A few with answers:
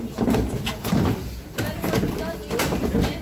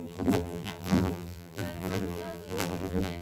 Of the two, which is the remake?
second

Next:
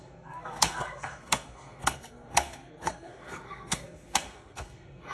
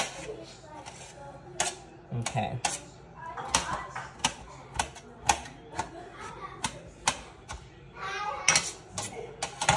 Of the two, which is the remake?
first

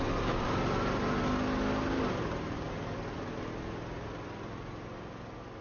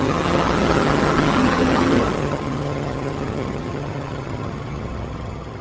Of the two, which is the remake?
second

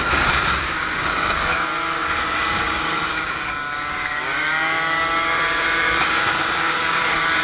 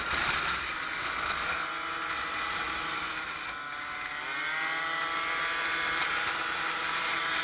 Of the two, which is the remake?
first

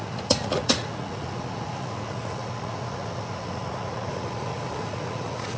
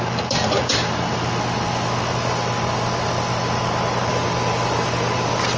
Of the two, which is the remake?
first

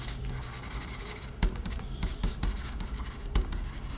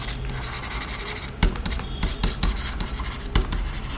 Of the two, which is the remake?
first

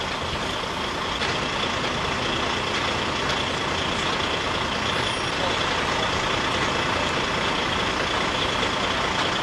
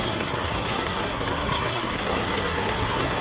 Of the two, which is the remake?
second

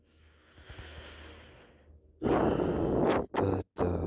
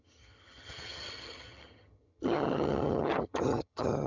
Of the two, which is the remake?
second